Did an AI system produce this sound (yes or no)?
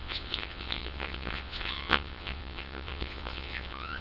yes